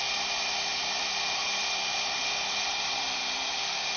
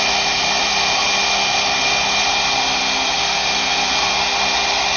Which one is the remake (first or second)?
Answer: first